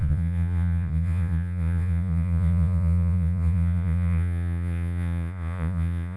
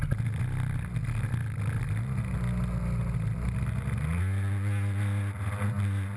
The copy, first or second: first